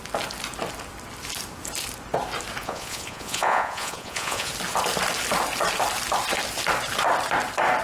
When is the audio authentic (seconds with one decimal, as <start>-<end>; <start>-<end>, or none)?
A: 0.0-2.6; 4.5-7.8